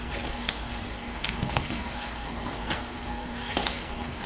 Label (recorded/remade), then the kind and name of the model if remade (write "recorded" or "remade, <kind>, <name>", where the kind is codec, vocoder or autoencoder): remade, codec, SNAC